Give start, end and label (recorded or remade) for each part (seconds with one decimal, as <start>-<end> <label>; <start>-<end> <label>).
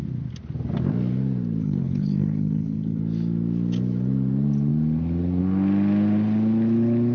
0.0-1.6 recorded; 1.6-3.0 remade; 3.0-7.1 recorded